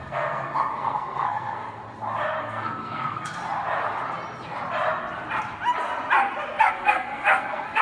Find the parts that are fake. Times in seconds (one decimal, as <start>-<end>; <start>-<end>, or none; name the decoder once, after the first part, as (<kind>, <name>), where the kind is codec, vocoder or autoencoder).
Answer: 0.0-1.8 (codec, SNAC); 2.4-3.4; 6.7-7.8